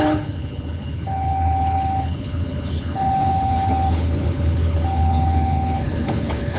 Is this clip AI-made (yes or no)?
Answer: yes